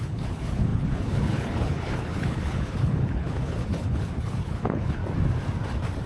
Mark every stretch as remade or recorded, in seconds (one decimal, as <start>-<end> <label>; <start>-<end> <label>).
0.0-5.0 remade; 5.0-6.1 recorded